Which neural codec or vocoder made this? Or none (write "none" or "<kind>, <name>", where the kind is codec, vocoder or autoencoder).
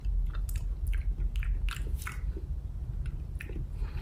none